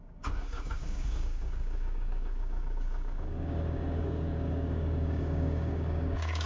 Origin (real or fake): fake